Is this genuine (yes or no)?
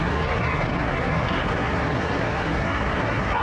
no